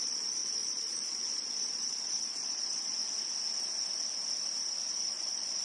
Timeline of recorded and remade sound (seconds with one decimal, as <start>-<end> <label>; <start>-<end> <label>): 0.0-3.0 remade; 3.0-5.1 recorded; 5.1-5.6 remade